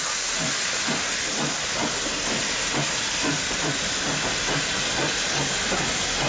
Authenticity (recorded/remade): recorded